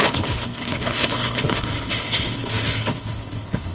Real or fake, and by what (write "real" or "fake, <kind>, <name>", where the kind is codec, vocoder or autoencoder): fake, codec, HILCodec